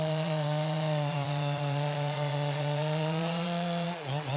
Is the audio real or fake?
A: fake